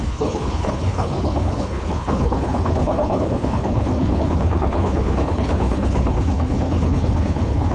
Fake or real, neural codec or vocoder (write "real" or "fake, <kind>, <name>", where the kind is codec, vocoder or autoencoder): fake, codec, HILCodec